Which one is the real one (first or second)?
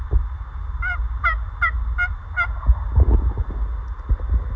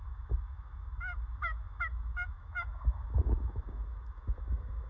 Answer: first